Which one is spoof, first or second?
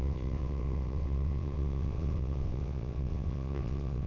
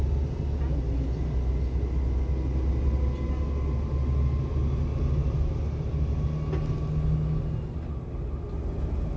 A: first